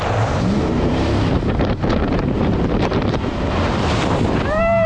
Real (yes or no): no